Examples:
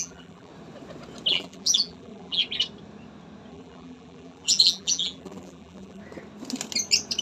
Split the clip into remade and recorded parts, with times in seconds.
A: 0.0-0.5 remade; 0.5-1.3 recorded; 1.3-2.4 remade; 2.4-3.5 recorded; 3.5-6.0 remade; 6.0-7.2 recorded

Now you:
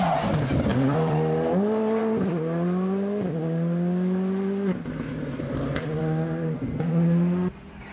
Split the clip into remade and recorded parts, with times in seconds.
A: 0.0-0.7 recorded; 0.7-2.0 remade; 2.0-5.1 recorded; 5.1-6.0 remade; 6.0-7.9 recorded

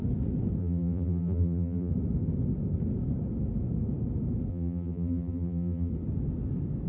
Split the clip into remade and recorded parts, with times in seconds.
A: 0.0-0.6 recorded; 0.6-1.9 remade; 1.9-4.5 recorded; 4.5-5.9 remade; 5.9-6.9 recorded

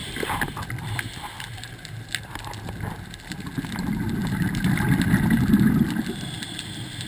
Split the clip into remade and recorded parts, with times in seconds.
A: 0.0-0.6 remade; 0.6-7.1 recorded

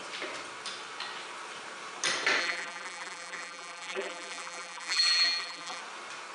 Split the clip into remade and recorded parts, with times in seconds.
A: 0.0-2.4 recorded; 2.4-5.8 remade; 5.8-6.3 recorded

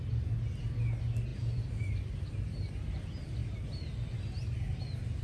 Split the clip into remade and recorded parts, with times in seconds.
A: 0.0-1.3 recorded; 1.3-2.7 remade; 2.7-3.4 recorded; 3.4-4.1 remade; 4.1-5.2 recorded

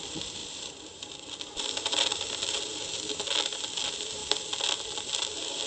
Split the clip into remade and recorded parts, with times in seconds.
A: 0.0-4.2 remade; 4.2-5.1 recorded; 5.1-5.7 remade

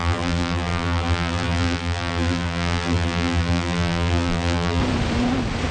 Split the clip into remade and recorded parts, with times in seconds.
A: 0.0-4.8 remade; 4.8-5.7 recorded